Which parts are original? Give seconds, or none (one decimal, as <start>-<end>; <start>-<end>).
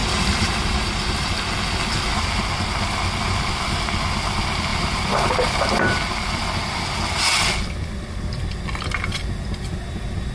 1.4-4.7; 5.7-10.3